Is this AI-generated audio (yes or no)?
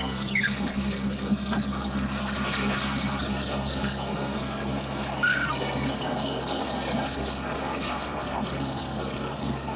yes